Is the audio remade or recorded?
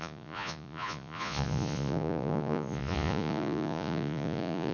remade